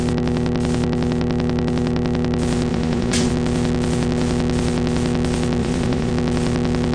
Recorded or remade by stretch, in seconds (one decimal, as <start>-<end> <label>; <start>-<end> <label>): 0.0-2.7 recorded; 2.7-3.3 remade; 3.3-5.6 recorded; 5.6-6.1 remade; 6.1-6.9 recorded